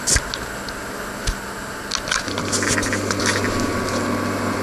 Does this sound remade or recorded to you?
recorded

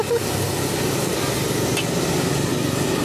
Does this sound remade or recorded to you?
recorded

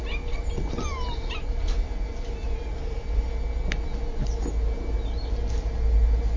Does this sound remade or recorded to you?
recorded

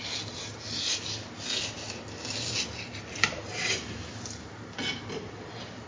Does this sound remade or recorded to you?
recorded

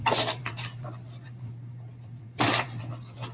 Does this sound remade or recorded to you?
remade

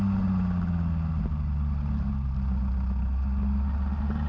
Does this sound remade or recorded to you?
recorded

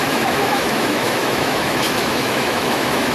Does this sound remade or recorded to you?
remade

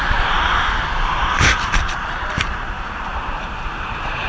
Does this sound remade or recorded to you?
remade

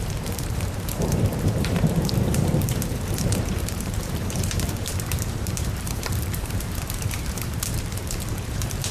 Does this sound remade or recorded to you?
remade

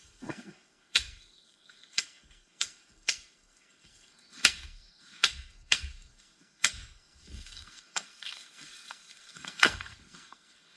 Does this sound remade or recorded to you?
remade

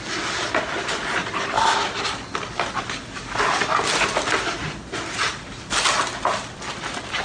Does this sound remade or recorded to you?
recorded